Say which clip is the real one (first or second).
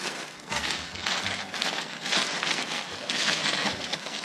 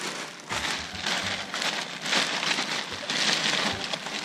second